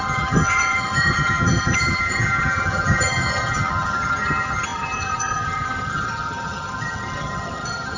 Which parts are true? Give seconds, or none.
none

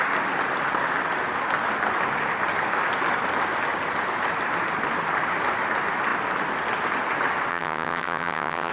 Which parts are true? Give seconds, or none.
0.0-7.5

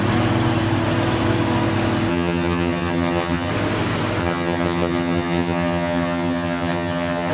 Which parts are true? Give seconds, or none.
0.0-2.1; 3.5-4.2

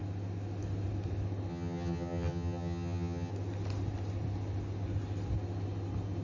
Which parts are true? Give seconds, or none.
0.0-1.5; 3.3-6.2

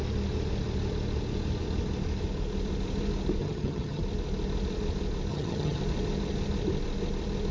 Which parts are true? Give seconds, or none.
0.0-3.4; 4.0-5.3; 5.8-7.5

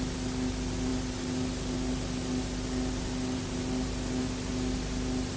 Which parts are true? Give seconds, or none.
0.0-5.4

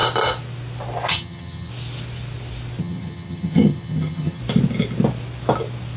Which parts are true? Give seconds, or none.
0.0-1.1; 1.7-2.8; 4.4-6.0